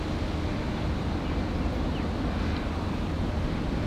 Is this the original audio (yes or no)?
yes